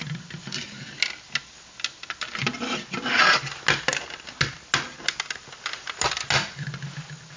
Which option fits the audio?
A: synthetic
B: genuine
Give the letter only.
B